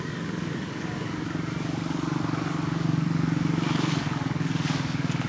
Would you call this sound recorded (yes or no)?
no